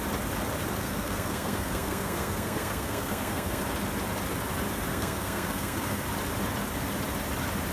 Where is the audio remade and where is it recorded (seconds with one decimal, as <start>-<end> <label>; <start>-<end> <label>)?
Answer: 0.0-0.8 recorded; 0.8-3.6 remade; 3.6-4.9 recorded; 4.9-6.0 remade; 6.0-7.7 recorded

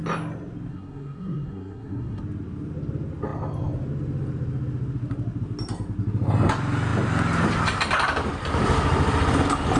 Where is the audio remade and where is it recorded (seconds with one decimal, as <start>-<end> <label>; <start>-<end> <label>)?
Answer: 0.0-0.7 recorded; 0.7-2.2 remade; 2.2-9.8 recorded